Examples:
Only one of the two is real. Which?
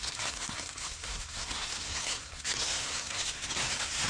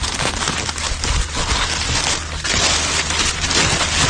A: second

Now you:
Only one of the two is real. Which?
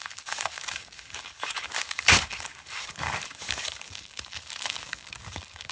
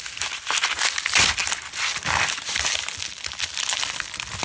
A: second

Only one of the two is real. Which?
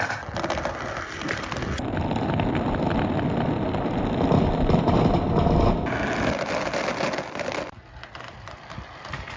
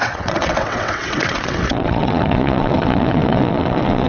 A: first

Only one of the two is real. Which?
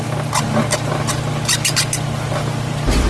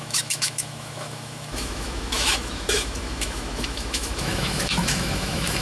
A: first